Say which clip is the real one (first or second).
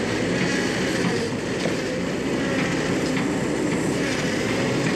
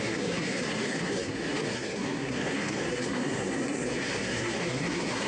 first